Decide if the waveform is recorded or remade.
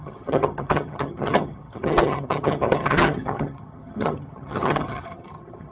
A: remade